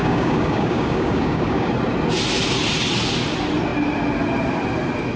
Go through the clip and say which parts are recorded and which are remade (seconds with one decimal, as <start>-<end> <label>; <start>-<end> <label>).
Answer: 0.0-1.7 remade; 1.7-5.2 recorded